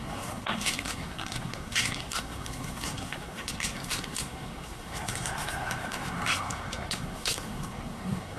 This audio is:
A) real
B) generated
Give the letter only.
B